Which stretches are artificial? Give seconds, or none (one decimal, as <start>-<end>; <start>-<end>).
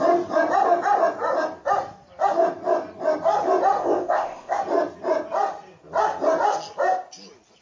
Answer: 3.8-4.6